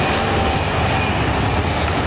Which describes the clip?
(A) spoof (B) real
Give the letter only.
B